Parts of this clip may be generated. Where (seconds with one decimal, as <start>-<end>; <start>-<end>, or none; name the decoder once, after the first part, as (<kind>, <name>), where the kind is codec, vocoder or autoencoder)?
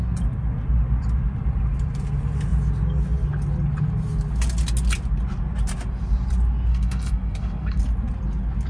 6.7-7.8 (codec, SNAC)